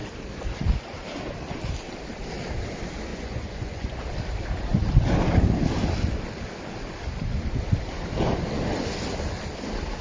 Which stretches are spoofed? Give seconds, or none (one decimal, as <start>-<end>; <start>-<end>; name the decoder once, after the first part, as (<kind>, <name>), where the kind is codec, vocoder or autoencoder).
3.1-4.0 (vocoder, Vocos)